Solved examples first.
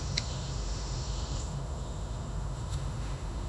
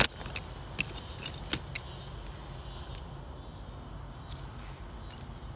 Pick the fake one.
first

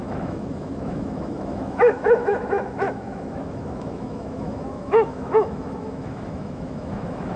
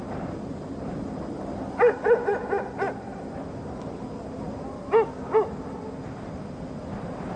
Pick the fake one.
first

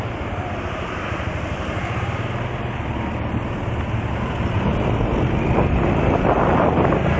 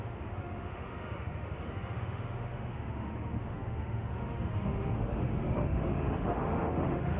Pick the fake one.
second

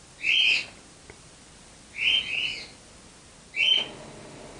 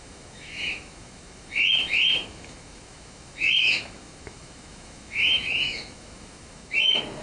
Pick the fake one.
second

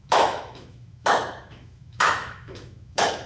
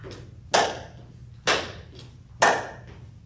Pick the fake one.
first